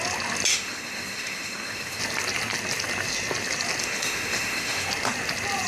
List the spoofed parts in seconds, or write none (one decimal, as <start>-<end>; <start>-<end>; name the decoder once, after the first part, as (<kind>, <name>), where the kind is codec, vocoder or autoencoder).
0.5-2.0 (autoencoder, DAC-VAE); 3.8-4.9